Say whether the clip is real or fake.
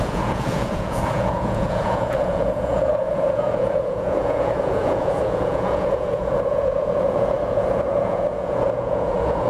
fake